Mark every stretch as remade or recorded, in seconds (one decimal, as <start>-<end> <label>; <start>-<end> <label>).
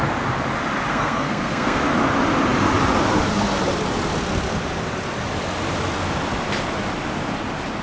0.0-0.9 recorded; 0.9-1.8 remade; 1.8-7.8 recorded